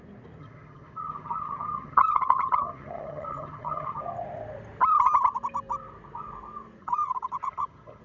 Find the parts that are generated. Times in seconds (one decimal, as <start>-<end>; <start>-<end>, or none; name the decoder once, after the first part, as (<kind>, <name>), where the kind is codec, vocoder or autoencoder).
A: 0.4-4.0 (vocoder, HiFi-GAN); 6.8-8.0

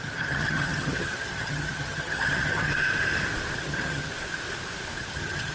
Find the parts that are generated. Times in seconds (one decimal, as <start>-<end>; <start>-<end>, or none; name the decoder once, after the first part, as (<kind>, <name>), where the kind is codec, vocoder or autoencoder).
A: 0.0-2.7 (vocoder, HiFi-GAN); 3.6-4.1; 5.0-5.5

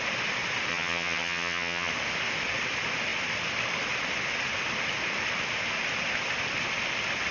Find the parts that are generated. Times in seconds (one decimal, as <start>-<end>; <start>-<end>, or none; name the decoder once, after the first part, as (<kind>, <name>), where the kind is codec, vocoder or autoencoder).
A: 0.7-1.9 (vocoder, HiFi-GAN)

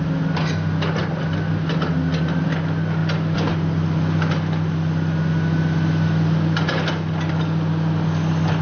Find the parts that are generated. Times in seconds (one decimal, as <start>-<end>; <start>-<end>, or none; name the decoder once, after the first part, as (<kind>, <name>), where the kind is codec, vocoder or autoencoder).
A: none

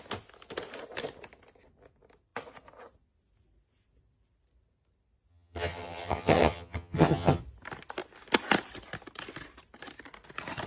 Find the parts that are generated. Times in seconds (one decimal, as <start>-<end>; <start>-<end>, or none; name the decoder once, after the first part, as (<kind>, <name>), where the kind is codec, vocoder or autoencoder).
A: 5.3-7.4 (vocoder, HiFi-GAN)

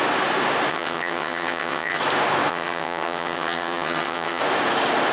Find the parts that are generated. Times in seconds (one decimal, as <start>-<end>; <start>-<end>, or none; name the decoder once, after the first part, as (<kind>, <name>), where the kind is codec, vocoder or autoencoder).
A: 0.7-2.0 (vocoder, HiFi-GAN); 2.5-4.4